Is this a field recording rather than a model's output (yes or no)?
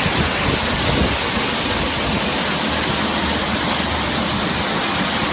yes